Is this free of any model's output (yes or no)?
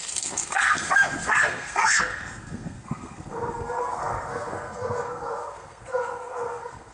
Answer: no